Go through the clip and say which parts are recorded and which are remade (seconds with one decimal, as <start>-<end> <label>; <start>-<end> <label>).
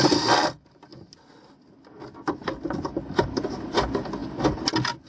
0.0-5.1 recorded